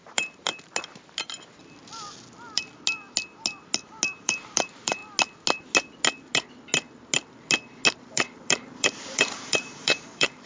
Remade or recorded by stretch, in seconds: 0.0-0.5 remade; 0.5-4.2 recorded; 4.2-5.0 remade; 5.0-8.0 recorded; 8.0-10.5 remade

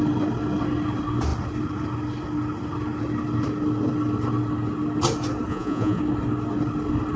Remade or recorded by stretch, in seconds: 0.0-5.5 recorded; 5.5-6.0 remade; 6.0-7.2 recorded

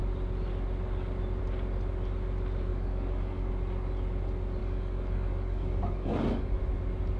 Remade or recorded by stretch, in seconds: 0.0-2.7 recorded; 2.7-3.5 remade; 3.5-4.6 recorded; 4.6-6.6 remade; 6.6-7.2 recorded

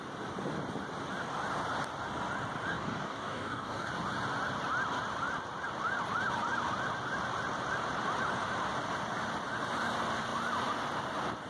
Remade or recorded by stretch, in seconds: 0.0-2.7 recorded; 2.7-3.9 remade; 3.9-11.5 recorded

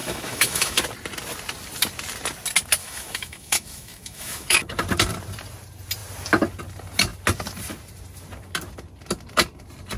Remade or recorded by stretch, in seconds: 0.0-0.8 remade; 0.8-2.8 recorded; 2.8-4.6 remade; 4.6-10.0 recorded

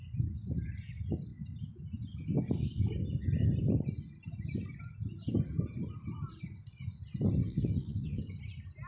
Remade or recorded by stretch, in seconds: 0.0-7.4 recorded; 7.4-8.2 remade; 8.2-8.9 recorded